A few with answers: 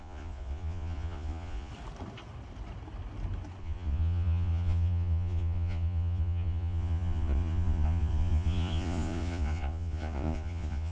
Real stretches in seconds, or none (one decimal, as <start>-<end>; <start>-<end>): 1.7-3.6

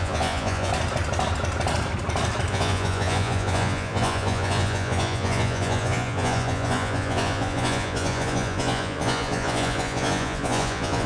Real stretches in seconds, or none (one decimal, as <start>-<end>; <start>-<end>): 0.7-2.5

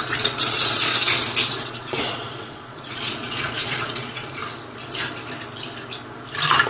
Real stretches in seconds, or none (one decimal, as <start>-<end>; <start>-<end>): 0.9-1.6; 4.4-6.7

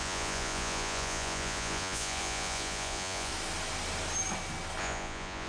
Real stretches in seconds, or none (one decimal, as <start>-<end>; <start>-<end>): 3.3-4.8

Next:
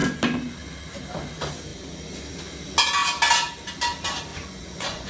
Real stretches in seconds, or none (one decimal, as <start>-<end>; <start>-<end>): 0.0-4.3

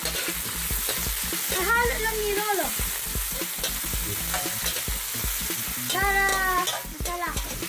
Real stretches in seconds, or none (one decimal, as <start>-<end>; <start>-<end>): 0.0-7.7